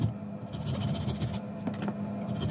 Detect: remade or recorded recorded